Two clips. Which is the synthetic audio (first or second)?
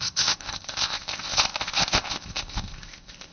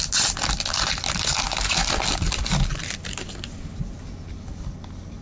first